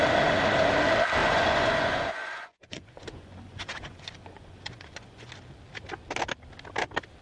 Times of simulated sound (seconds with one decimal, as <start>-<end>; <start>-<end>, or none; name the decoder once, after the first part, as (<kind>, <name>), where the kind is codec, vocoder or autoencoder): 1.2-5.3 (vocoder, Vocos)